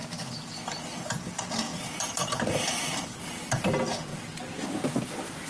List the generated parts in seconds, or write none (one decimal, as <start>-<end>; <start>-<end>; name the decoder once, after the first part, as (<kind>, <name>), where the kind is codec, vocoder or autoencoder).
0.0-0.8 (vocoder, BigVGAN v2)